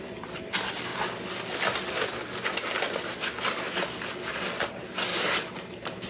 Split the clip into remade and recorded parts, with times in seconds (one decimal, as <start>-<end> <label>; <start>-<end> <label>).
0.0-0.9 remade; 0.9-4.6 recorded; 4.6-6.1 remade